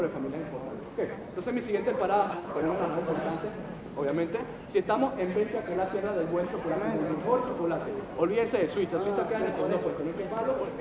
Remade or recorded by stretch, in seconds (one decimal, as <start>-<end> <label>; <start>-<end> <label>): 0.0-2.3 recorded; 2.3-2.8 remade; 2.8-10.8 recorded